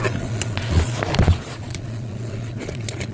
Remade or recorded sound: remade